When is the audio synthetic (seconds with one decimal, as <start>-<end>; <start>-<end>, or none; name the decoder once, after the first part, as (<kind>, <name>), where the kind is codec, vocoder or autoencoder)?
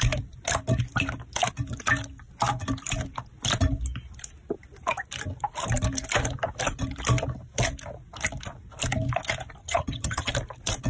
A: 9.6-10.3 (vocoder, HiFi-GAN)